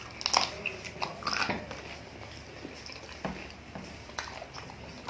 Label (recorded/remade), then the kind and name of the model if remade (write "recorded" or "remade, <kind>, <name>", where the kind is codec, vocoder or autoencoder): recorded